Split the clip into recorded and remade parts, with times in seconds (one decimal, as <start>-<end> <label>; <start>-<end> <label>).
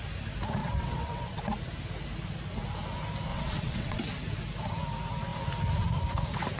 0.0-0.6 recorded; 0.6-1.4 remade; 1.4-3.3 recorded; 3.3-4.0 remade; 4.0-6.6 recorded